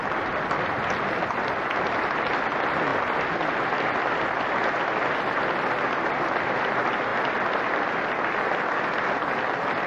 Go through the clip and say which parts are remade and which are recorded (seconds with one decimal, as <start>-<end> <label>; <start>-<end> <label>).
0.0-9.9 recorded